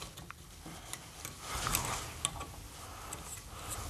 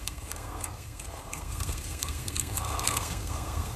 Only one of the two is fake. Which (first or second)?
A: second